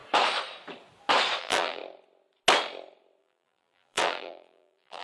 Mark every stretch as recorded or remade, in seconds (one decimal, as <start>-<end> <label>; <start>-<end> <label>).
0.0-1.4 recorded; 1.4-1.8 remade; 1.8-3.2 recorded; 3.2-5.0 remade